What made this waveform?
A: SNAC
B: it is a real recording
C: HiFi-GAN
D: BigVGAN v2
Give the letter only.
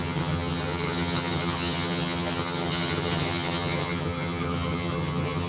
C